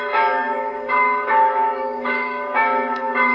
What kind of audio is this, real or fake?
fake